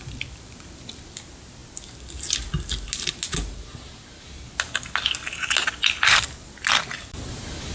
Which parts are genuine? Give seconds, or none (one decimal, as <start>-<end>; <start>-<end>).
0.0-7.7